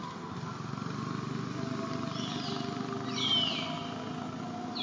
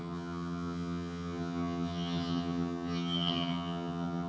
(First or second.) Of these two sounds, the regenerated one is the second